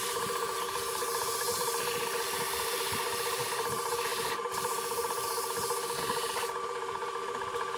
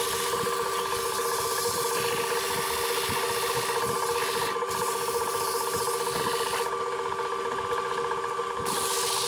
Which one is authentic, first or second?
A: second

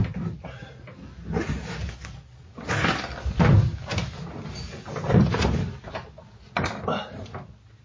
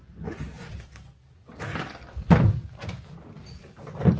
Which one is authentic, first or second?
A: first